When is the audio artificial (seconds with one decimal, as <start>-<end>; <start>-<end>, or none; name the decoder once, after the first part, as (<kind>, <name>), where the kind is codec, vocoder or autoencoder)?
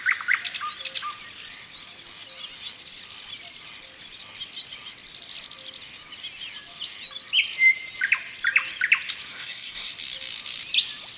9.3-9.9 (codec, DAC)